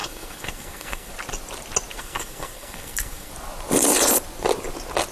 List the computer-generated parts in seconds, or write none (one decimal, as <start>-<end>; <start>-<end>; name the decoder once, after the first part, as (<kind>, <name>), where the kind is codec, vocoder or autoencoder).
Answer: 0.0-1.1 (codec, SNAC); 1.9-3.3